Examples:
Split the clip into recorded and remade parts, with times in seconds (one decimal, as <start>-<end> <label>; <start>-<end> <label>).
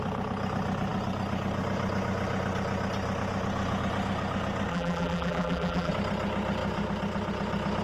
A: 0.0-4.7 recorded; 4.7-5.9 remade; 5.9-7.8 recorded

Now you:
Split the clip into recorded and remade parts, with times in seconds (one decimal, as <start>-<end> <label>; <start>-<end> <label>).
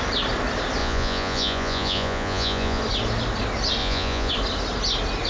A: 0.0-0.8 recorded; 0.8-2.8 remade; 2.8-3.8 recorded; 3.8-4.3 remade; 4.3-5.3 recorded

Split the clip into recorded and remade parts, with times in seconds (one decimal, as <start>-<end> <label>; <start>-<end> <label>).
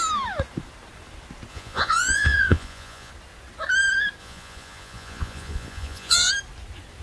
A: 0.0-1.5 recorded; 1.5-3.1 remade; 3.1-4.2 recorded; 4.2-6.3 remade; 6.3-7.0 recorded